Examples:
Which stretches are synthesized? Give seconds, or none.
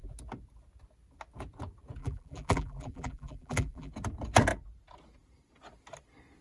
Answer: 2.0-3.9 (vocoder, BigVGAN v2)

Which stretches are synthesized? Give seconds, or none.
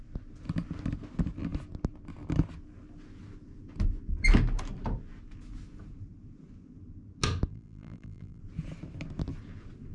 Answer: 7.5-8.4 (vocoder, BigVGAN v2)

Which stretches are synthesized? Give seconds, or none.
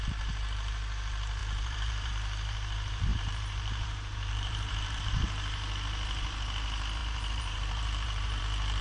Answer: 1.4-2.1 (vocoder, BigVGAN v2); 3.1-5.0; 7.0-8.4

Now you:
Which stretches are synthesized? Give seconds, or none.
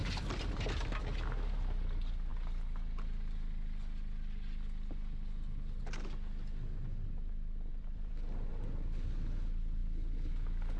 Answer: 0.0-1.0 (vocoder, BigVGAN v2); 7.7-8.5